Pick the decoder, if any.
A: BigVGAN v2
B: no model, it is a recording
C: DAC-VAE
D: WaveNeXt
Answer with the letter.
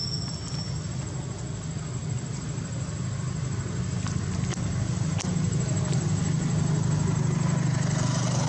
B